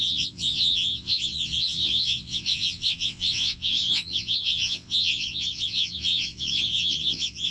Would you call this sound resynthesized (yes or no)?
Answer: yes